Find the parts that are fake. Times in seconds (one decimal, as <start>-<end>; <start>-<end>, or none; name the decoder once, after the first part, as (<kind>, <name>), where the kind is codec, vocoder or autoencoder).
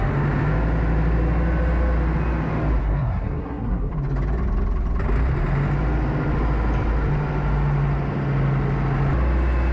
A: 2.8-3.9 (codec, SNAC)